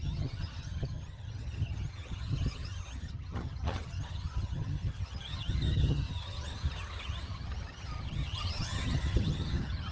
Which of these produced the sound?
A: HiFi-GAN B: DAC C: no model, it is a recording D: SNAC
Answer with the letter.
A